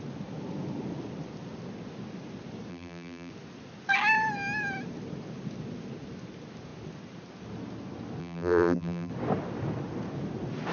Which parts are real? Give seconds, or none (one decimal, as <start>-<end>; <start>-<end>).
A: 0.0-2.7; 3.3-8.2; 9.1-10.7